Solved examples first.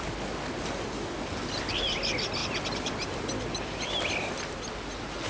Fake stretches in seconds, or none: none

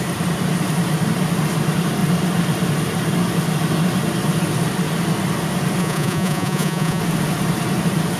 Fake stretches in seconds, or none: 5.8-7.0

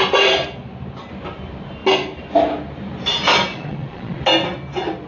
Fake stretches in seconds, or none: 3.5-4.2

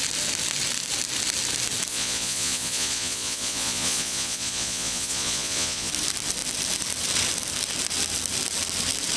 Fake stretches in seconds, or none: 1.9-5.9